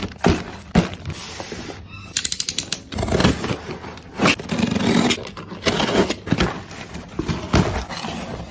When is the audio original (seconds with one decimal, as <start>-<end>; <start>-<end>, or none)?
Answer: 0.0-8.5